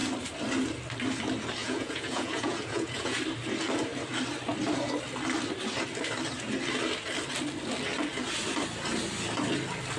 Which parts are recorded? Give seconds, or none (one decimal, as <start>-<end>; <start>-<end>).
0.0-1.6; 3.2-10.0